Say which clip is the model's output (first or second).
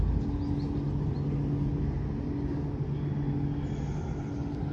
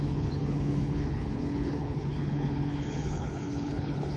second